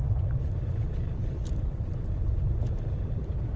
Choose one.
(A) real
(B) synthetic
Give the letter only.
B